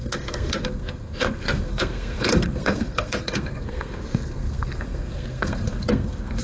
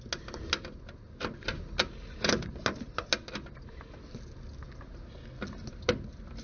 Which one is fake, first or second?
first